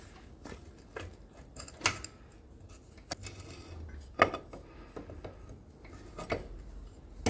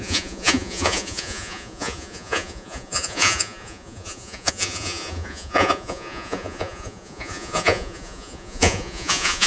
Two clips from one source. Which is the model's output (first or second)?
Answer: second